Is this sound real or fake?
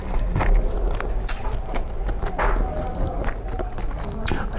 real